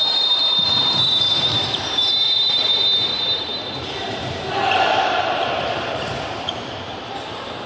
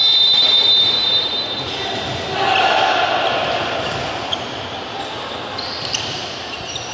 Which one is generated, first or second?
first